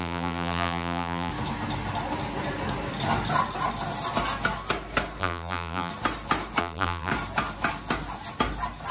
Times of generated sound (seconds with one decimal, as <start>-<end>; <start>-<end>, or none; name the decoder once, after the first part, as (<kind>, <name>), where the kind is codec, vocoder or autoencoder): 0.0-1.3 (vocoder, BigVGAN v2); 5.2-5.9; 6.6-7.1